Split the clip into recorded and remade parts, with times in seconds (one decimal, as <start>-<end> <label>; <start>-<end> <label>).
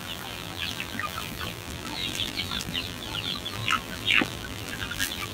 0.0-5.3 remade